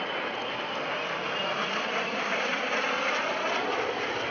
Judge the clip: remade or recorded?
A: recorded